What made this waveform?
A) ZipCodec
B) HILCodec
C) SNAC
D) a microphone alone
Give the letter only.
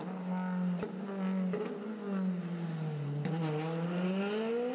D